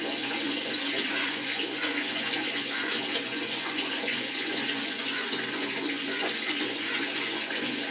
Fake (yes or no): yes